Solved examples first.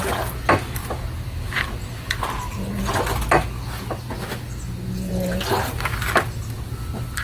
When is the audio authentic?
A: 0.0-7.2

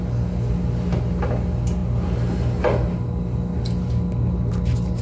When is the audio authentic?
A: 0.0-5.0

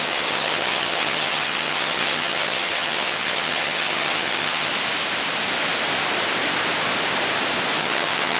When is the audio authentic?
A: 4.7-7.8

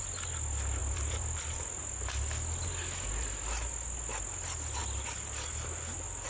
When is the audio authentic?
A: 0.0-0.8; 1.8-6.3

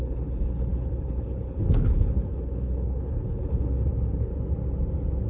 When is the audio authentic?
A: 4.3-5.3

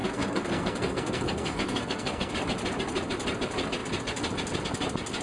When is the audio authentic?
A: 2.3-5.2

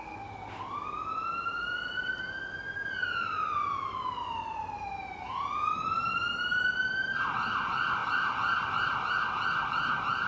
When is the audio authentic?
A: 0.0-10.3

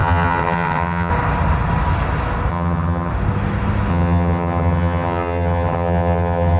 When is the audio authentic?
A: 1.1-2.5; 3.1-3.9